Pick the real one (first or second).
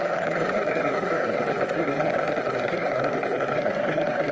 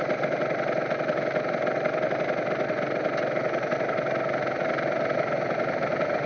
second